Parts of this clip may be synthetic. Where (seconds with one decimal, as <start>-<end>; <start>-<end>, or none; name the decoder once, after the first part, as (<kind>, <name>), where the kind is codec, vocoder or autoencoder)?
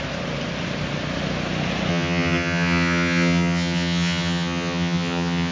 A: 1.9-5.5 (vocoder, HiFi-GAN)